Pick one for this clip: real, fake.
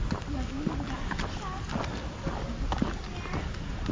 real